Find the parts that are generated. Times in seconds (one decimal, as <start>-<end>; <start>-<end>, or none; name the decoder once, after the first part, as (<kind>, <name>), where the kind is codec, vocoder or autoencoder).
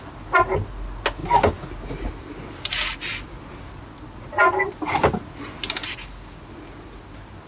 none